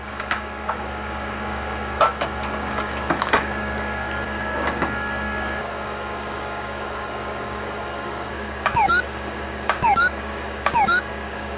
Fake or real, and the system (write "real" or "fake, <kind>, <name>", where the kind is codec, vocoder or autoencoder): fake, codec, DAC